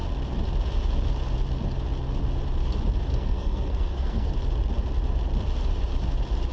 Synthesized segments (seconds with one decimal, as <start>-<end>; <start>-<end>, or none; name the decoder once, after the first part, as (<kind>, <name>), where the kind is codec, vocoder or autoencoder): 3.1-4.3 (codec, SNAC)